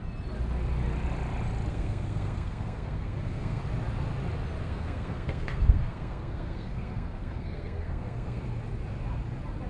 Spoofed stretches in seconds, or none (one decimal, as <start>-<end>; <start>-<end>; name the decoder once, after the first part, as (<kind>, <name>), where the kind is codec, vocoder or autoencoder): 1.7-3.6 (codec, SNAC); 4.6-8.4